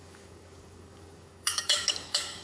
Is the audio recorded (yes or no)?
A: no